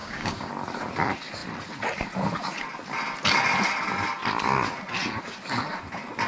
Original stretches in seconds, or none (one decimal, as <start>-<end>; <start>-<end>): 0.5-6.3